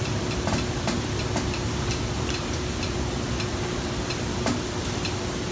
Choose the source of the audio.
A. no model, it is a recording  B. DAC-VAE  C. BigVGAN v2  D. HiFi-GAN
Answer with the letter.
C